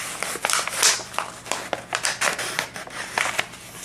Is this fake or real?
real